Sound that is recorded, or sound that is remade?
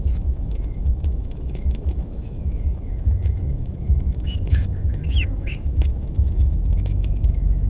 remade